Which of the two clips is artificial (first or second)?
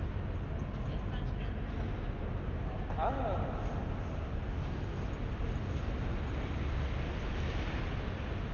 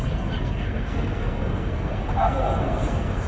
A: second